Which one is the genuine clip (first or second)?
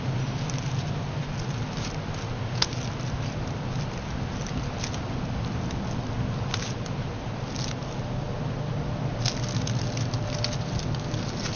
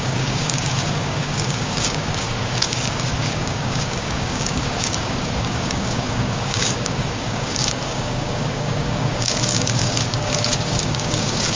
first